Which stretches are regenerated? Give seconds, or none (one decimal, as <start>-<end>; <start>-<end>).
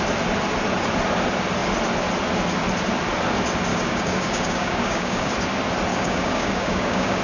3.7-5.3; 5.9-7.2